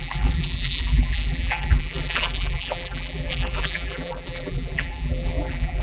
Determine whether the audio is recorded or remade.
remade